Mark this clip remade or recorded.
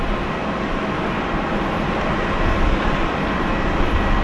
recorded